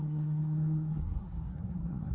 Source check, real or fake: fake